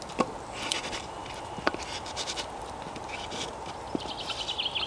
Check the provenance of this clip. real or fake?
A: real